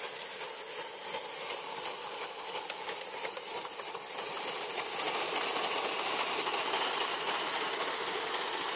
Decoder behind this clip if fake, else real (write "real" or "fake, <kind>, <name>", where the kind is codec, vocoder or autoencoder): real